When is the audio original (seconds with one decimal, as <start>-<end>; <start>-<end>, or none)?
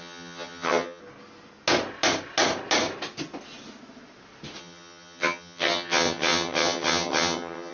1.0-4.6